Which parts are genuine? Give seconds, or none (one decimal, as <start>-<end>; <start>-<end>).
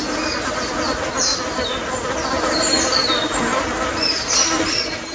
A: 0.0-5.1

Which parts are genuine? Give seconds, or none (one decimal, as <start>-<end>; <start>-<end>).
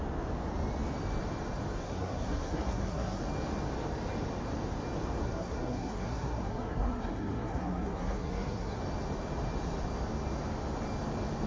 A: 0.0-1.8; 3.2-5.2; 8.8-11.5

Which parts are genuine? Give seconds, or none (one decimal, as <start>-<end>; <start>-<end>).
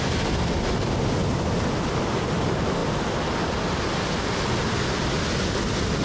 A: 0.0-6.0